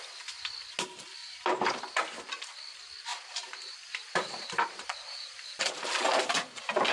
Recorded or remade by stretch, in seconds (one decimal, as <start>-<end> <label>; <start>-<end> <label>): 0.0-1.2 recorded; 1.2-1.8 remade; 1.8-3.1 recorded; 3.1-5.9 remade; 5.9-6.9 recorded